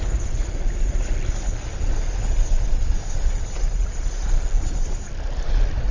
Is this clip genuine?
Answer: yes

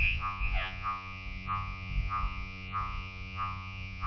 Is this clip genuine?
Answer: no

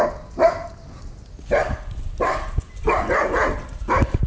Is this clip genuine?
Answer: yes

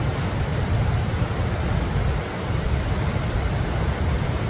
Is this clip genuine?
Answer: yes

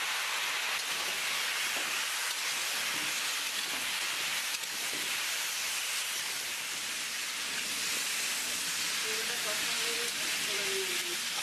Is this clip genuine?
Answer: yes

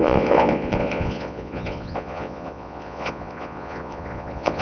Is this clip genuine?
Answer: no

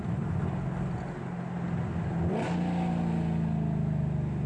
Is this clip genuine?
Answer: yes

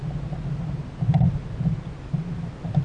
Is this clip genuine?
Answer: yes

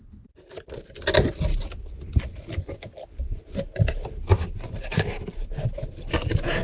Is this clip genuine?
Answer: yes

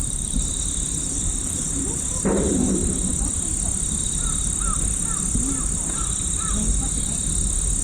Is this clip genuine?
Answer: yes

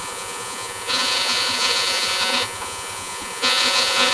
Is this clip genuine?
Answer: no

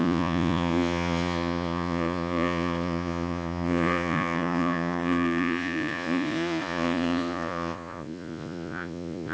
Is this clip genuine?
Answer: no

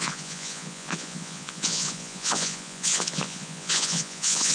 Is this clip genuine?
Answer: no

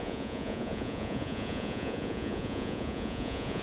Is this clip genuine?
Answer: no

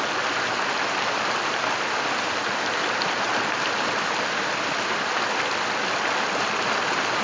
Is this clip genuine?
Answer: yes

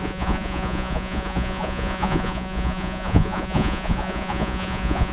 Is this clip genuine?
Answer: no